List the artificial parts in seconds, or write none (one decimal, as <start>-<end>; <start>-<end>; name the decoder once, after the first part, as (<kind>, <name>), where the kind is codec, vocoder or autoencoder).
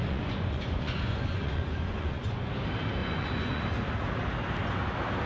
0.0-2.5 (vocoder, Vocos); 3.0-3.6